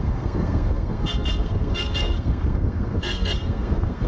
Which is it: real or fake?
fake